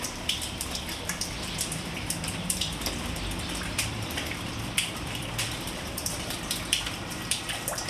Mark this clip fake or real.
fake